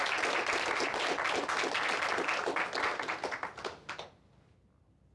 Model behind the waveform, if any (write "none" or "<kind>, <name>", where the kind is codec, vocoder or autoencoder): none